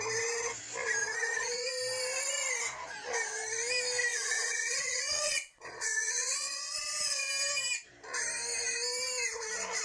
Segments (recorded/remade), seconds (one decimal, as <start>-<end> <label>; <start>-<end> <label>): 0.0-1.0 recorded; 1.0-1.7 remade; 1.7-4.1 recorded; 4.1-7.3 remade; 7.3-9.8 recorded